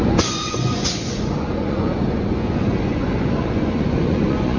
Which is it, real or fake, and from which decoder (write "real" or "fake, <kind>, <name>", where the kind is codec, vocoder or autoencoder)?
fake, vocoder, Vocos